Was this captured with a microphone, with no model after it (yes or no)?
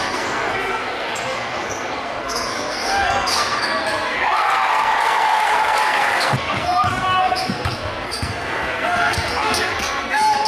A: no